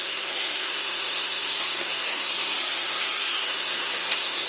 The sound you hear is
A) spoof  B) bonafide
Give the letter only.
A